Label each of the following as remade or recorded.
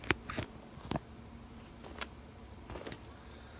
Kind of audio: recorded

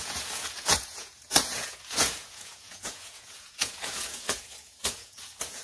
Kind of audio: remade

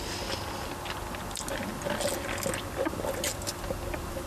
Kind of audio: recorded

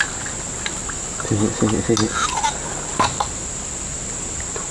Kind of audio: recorded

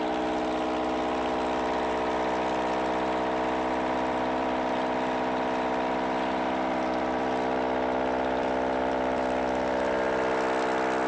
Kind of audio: remade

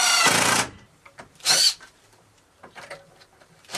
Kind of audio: remade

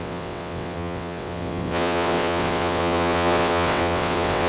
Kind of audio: remade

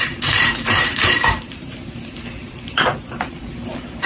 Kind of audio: remade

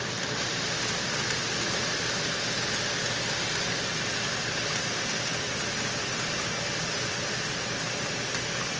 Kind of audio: recorded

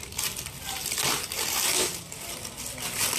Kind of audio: recorded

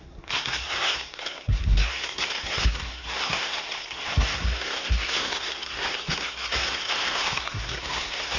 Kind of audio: remade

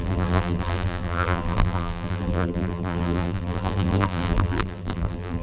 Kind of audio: remade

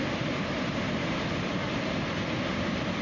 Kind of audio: recorded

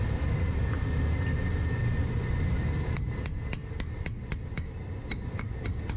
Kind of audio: recorded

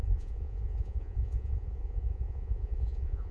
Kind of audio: remade